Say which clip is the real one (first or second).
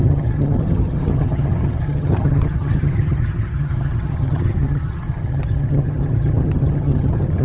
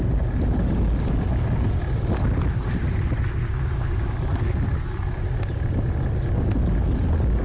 second